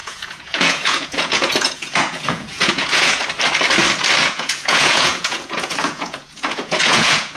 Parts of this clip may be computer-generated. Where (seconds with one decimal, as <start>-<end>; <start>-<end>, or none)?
0.0-3.2; 4.2-7.4